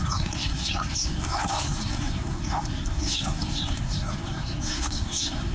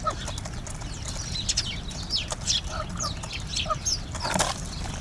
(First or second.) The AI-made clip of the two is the first